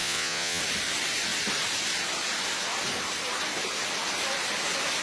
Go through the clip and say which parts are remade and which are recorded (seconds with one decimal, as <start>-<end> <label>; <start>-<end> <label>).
0.0-0.6 remade; 0.6-5.0 recorded